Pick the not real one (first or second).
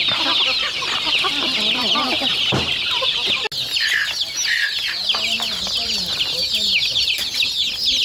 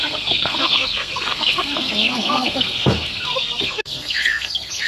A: second